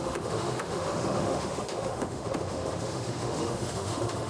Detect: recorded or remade remade